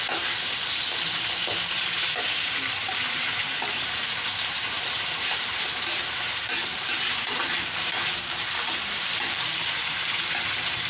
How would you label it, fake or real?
fake